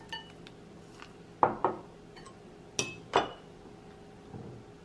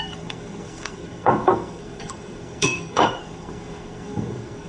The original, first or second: first